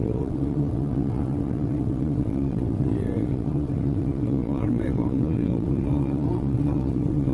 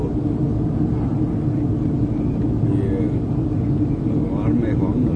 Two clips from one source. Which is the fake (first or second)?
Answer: first